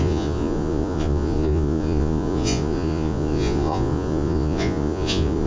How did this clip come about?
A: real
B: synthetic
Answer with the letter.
B